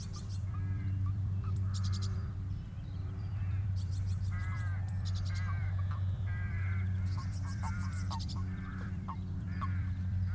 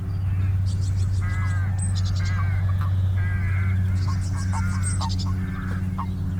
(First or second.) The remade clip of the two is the first